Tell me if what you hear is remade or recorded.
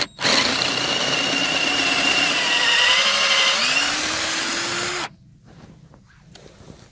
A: recorded